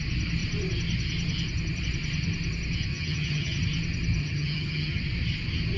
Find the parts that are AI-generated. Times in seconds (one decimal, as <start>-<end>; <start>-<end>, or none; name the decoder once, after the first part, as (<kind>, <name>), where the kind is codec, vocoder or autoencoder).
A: 2.9-3.6 (vocoder, HiFi-GAN); 4.2-5.0